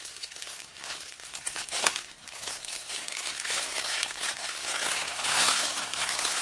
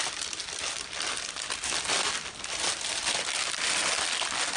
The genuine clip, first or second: second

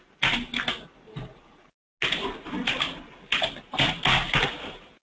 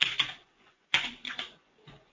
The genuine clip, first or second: first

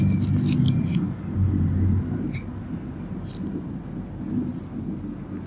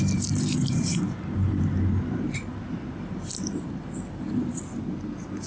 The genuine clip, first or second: first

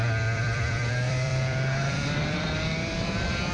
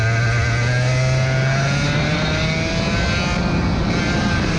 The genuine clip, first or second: second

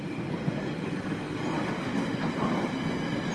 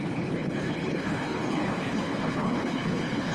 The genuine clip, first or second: first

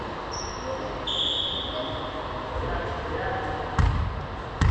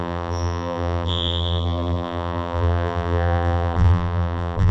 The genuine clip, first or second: first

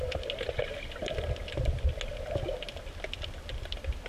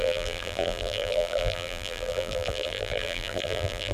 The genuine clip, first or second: first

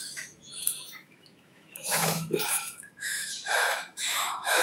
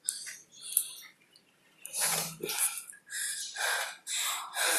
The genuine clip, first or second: second